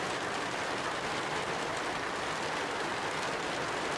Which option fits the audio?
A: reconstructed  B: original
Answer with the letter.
B